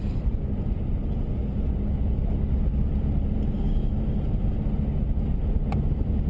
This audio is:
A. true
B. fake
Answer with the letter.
A